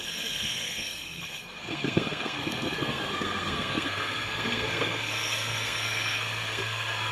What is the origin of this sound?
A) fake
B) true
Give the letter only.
A